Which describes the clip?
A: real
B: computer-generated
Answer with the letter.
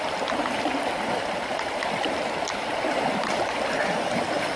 B